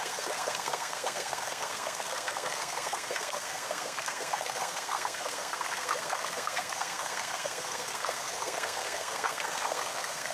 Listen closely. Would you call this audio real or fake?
fake